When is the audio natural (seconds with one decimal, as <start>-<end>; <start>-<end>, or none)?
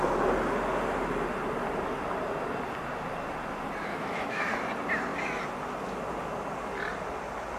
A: 0.0-3.9; 4.5-7.6